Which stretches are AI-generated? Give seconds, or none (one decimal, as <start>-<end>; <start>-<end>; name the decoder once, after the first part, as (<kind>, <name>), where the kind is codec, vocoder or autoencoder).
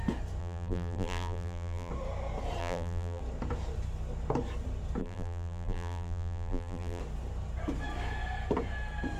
0.4-1.9 (vocoder, BigVGAN v2); 2.6-3.2; 5.0-7.0